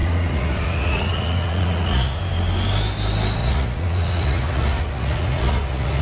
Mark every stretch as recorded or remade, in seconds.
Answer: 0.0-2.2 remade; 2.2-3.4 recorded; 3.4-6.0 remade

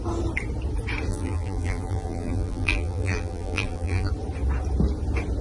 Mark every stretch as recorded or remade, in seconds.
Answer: 0.0-1.1 recorded; 1.1-4.1 remade; 4.1-5.4 recorded

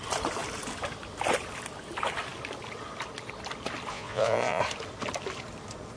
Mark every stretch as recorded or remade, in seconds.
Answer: 0.0-3.9 recorded; 3.9-4.6 remade; 4.6-6.0 recorded

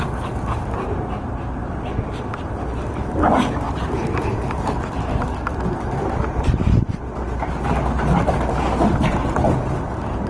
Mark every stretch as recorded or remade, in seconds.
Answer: 0.0-1.6 recorded; 1.6-4.8 remade; 4.8-5.5 recorded; 5.5-6.0 remade; 6.0-10.3 recorded

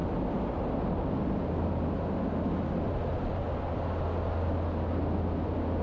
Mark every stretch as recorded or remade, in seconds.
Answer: 0.0-5.8 recorded